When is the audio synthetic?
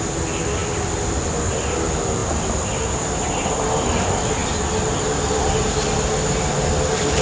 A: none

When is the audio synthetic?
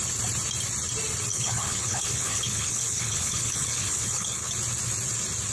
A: 1.3-4.5 (codec, HILCodec)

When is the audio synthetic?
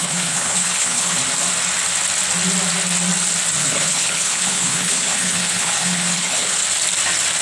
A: 0.0-1.2 (codec, HILCodec); 3.6-6.6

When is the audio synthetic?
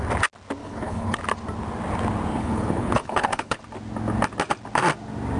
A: 0.6-1.2 (codec, HILCodec); 2.3-3.6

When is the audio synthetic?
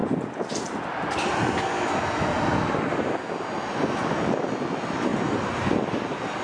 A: none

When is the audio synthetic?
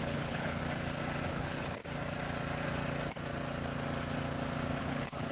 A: 0.0-0.6 (codec, HILCodec); 1.3-1.8; 4.8-5.3